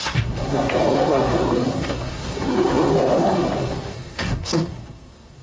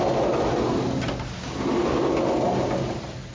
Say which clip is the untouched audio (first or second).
second